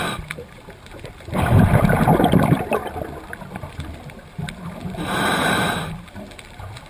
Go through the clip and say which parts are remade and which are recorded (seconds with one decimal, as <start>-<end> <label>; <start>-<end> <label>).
0.0-2.8 remade; 2.8-3.7 recorded; 3.7-6.9 remade